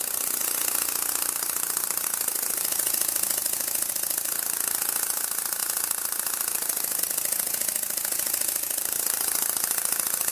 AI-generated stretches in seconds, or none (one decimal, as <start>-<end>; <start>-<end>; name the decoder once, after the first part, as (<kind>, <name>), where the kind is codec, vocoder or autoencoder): 0.0-0.4 (vocoder, BigVGAN v2); 1.1-10.3